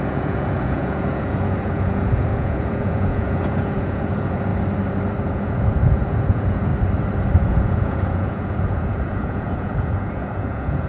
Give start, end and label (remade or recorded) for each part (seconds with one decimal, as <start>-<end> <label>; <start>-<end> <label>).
0.0-4.5 remade; 4.5-5.2 recorded; 5.2-6.7 remade; 6.7-7.4 recorded; 7.4-10.9 remade